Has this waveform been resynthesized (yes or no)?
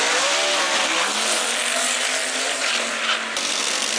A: no